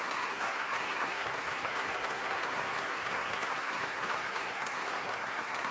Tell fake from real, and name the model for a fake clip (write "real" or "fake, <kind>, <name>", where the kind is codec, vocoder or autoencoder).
fake, codec, SNAC